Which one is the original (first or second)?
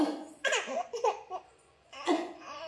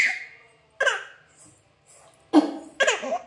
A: second